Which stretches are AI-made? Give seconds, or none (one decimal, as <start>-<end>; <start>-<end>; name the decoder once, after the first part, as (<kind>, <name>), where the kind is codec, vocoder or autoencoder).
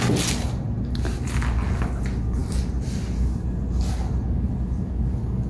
none